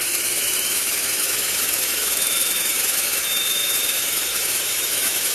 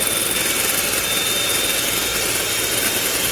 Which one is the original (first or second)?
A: second